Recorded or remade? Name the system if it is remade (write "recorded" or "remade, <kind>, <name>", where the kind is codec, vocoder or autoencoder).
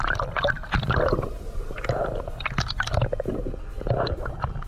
recorded